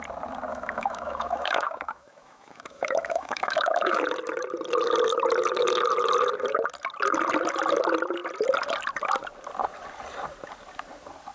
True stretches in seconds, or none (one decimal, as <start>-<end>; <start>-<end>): 0.0-0.5; 4.0-11.3